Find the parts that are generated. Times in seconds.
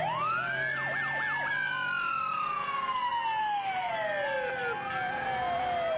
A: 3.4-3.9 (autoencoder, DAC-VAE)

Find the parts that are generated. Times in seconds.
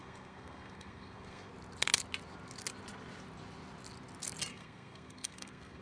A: 0.0-1.5 (codec, SNAC); 4.5-5.8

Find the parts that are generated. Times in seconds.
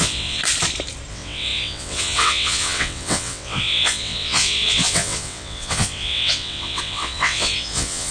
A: 0.0-0.4 (vocoder, WaveNeXt); 1.1-8.1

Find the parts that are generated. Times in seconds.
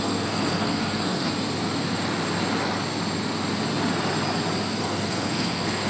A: 0.0-1.3 (codec, SNAC); 4.8-5.9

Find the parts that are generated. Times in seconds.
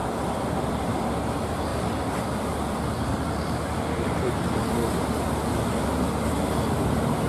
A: 0.0-0.7 (vocoder, BigVGAN v2); 1.7-4.3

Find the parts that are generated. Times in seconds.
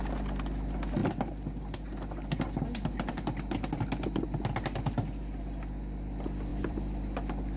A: 6.5-7.6 (vocoder, BigVGAN v2)